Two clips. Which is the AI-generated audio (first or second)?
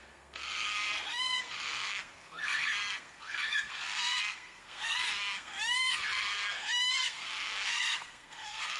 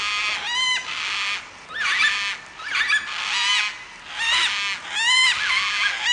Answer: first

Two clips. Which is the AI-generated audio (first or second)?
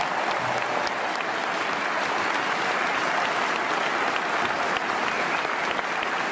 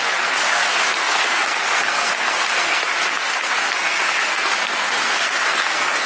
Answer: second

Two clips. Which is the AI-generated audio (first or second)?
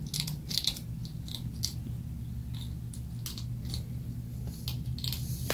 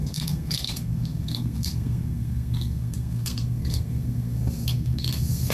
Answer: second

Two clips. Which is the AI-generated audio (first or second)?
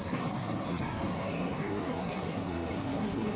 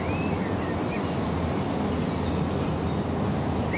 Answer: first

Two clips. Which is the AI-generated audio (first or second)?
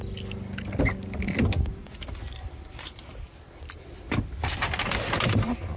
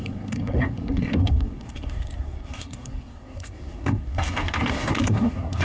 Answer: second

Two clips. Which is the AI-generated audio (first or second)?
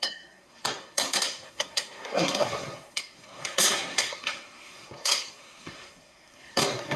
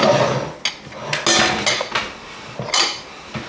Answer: first